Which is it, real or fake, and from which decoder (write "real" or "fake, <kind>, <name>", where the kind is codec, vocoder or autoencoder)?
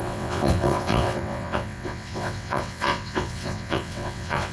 fake, vocoder, WaveNeXt